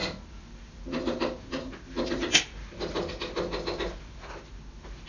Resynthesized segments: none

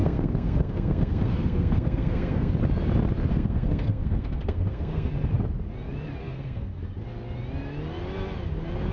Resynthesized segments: 0.0-2.5 (codec, SNAC); 3.3-5.1; 6.2-6.8

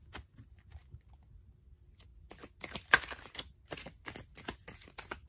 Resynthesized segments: none

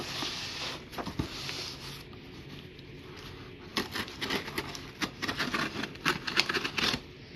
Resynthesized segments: none